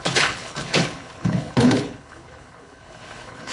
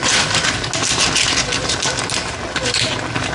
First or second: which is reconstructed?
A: first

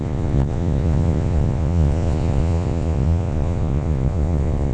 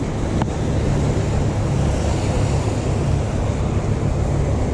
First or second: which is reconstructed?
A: first